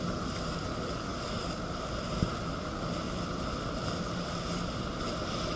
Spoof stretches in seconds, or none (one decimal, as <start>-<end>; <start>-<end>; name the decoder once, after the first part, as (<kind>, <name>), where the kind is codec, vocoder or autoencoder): none